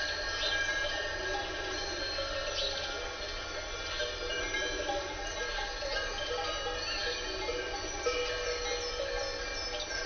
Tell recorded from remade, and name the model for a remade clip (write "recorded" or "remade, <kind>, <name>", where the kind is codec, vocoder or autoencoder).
recorded